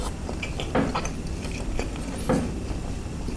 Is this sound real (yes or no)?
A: yes